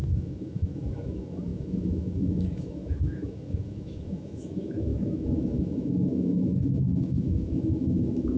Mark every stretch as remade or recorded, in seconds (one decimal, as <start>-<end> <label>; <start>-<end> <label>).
0.0-8.4 remade